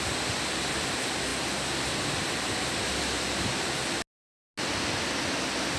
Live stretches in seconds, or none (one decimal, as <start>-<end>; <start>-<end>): 0.0-5.8